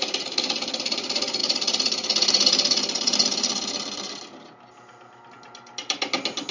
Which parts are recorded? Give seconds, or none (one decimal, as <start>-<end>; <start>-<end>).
0.0-6.5